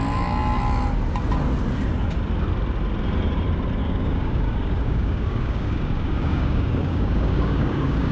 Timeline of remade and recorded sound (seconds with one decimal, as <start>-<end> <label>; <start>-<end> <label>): 0.0-3.8 recorded; 3.8-8.1 remade